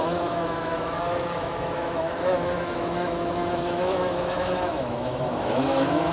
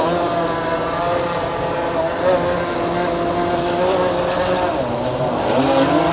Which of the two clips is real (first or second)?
second